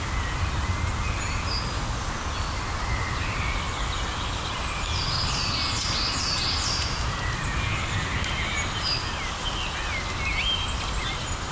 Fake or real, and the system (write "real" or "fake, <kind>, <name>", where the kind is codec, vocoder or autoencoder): real